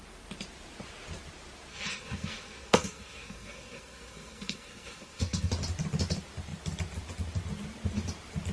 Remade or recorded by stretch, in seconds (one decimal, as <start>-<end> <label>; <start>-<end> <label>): 0.0-1.7 recorded; 1.7-5.5 remade; 5.5-8.5 recorded